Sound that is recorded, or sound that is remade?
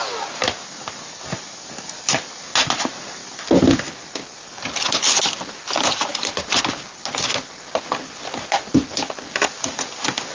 recorded